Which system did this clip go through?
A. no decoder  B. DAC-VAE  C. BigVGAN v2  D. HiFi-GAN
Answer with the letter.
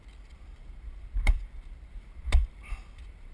C